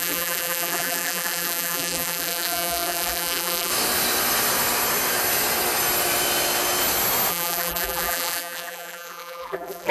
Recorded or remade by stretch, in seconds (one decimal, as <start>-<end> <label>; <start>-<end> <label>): 0.0-3.7 remade; 3.7-7.3 recorded; 7.3-9.9 remade